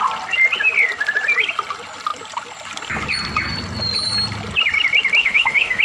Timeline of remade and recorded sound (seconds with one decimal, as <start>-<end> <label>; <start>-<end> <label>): 0.0-5.2 recorded; 5.2-5.8 remade